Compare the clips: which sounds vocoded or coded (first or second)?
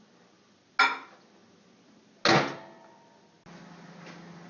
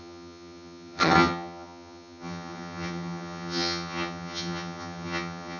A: second